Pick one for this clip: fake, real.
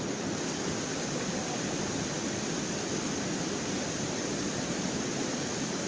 real